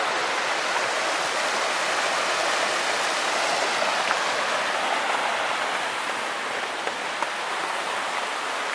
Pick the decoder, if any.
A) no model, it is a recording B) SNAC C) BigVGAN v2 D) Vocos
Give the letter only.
A